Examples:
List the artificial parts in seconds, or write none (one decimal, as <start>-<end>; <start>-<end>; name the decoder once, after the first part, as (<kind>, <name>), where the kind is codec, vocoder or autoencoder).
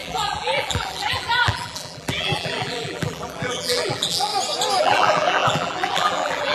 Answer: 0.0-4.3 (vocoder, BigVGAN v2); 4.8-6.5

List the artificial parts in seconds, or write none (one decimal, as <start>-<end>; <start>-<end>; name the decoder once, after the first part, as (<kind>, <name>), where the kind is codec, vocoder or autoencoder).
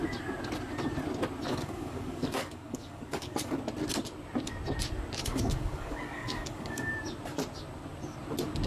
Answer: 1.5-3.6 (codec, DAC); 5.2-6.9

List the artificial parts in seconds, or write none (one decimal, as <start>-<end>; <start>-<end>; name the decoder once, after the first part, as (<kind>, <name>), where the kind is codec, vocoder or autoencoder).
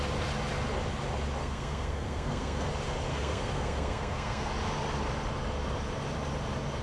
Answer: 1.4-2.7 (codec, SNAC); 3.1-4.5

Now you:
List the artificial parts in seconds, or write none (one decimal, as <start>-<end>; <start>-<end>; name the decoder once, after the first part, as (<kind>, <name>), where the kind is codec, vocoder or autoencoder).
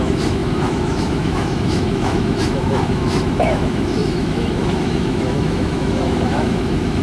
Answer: 0.0-7.0 (autoencoder, DAC-VAE)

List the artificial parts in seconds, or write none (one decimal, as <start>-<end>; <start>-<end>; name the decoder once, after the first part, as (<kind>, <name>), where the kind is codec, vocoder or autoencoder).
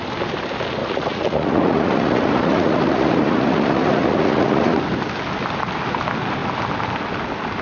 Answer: 0.8-4.8 (vocoder, Vocos)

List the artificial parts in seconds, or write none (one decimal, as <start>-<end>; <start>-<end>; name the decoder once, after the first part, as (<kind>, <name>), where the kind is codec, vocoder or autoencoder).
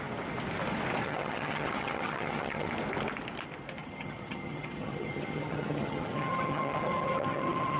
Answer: 1.0-2.7 (vocoder, HiFi-GAN); 3.8-7.8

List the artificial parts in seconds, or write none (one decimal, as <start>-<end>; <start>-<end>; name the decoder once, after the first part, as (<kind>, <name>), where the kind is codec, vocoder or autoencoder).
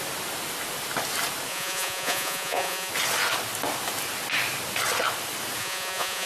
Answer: 1.5-2.9 (vocoder, Vocos); 5.6-6.3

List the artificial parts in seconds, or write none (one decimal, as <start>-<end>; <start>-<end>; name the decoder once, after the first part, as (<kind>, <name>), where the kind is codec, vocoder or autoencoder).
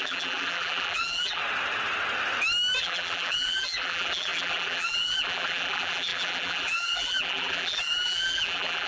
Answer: 0.0-1.4 (vocoder, BigVGAN v2); 2.8-8.9